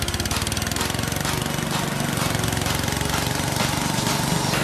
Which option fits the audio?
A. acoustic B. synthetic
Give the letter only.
A